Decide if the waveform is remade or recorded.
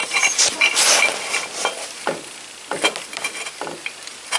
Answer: recorded